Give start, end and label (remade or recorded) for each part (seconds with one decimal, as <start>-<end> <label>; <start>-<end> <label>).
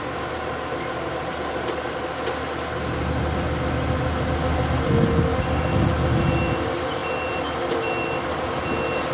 0.0-9.1 recorded